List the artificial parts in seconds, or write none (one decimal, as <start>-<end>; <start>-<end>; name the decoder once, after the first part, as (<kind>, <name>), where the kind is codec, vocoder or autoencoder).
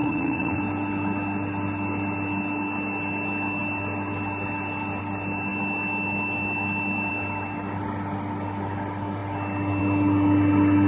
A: 0.0-0.6 (vocoder, Vocos)